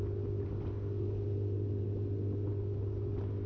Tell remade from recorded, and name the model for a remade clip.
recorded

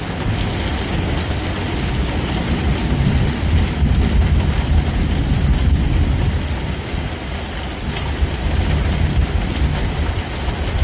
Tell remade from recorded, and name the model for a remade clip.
recorded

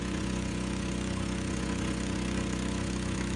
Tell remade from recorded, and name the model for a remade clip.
remade, vocoder, Vocos